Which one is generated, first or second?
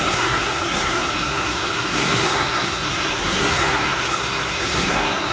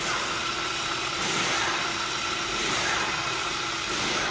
first